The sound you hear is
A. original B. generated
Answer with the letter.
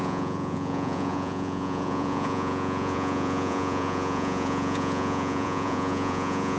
B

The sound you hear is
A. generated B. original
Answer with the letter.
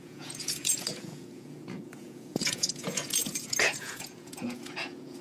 A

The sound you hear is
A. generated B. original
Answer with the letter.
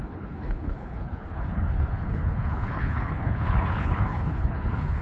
A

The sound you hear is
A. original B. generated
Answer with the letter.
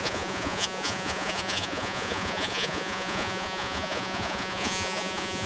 B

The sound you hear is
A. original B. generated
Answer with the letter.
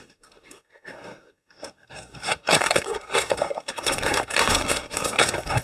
B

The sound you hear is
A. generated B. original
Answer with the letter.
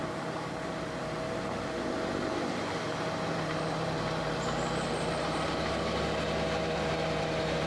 A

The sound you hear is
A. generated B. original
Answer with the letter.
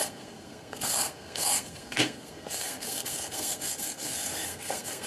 A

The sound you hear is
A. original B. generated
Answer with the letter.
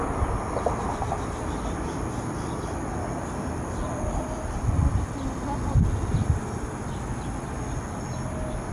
A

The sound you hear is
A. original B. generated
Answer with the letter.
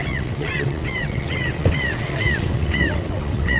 B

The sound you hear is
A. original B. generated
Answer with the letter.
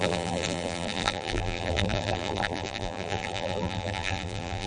B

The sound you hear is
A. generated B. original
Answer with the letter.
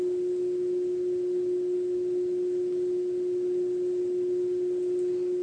B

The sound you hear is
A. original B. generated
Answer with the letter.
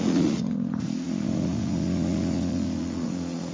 B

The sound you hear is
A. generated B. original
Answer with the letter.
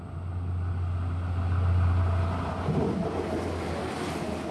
B